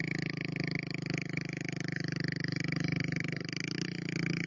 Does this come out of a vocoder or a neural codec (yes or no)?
no